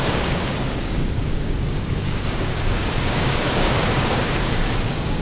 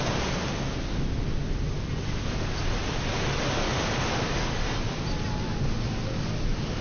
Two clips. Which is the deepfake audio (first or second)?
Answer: first